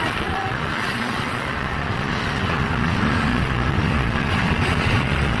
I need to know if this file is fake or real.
fake